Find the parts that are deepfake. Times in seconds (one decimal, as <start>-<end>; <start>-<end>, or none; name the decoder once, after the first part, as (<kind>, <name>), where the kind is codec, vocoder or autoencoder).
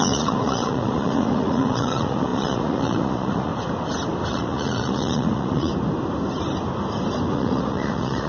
0.0-3.5 (vocoder, Vocos); 4.3-5.7; 7.3-8.3